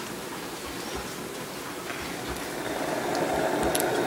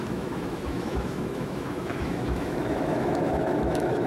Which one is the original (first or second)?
first